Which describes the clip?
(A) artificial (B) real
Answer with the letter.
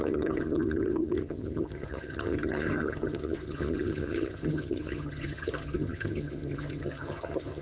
A